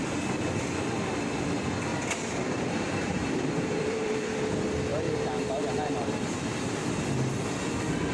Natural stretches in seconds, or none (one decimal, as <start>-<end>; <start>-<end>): 0.0-1.9; 4.4-4.9; 6.8-8.1